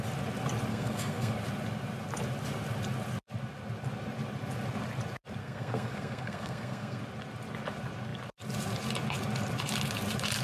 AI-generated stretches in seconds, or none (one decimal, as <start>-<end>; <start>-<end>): 0.7-1.3; 5.4-7.0